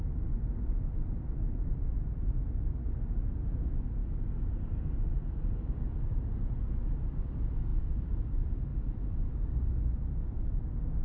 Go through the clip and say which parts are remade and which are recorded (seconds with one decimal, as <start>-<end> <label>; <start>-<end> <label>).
0.0-11.0 recorded